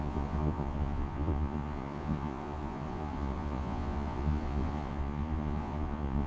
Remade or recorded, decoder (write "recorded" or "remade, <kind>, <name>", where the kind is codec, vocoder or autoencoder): remade, vocoder, Vocos